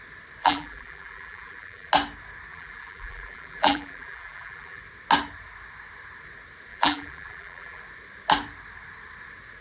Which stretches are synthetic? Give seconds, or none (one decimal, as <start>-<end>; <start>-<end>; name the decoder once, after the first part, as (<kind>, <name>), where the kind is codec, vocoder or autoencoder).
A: 0.4-1.9 (vocoder, BigVGAN v2); 2.5-4.8; 6.7-7.8